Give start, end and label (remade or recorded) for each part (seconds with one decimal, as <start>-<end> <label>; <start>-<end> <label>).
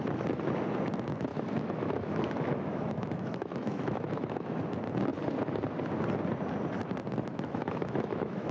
0.0-1.3 recorded; 1.3-4.6 remade; 4.6-7.3 recorded; 7.3-8.5 remade